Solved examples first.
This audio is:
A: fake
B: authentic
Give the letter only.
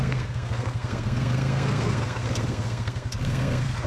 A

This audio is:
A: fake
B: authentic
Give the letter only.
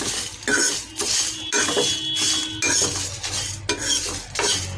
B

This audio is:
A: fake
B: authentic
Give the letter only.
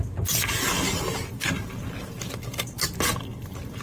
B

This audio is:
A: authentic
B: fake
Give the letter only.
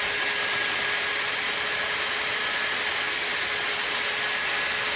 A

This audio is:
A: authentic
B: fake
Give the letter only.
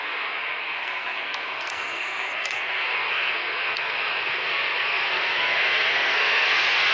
B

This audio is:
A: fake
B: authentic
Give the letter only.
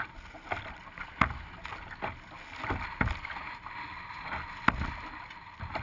B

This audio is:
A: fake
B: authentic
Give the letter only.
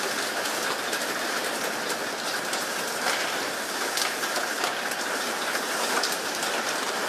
B